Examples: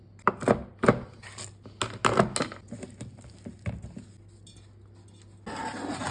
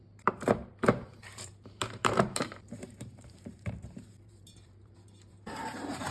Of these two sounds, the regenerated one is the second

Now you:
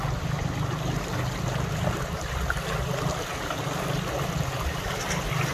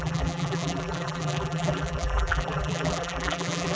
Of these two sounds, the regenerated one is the second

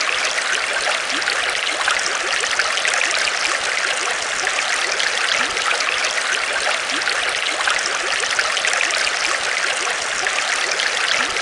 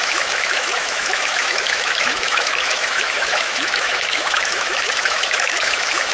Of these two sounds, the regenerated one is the second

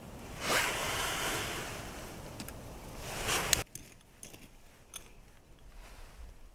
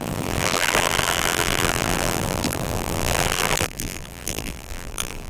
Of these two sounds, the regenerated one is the second